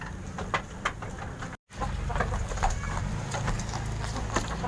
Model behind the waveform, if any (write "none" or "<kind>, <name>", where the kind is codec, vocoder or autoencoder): none